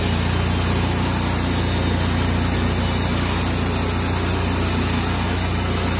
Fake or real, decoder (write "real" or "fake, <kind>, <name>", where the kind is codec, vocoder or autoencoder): real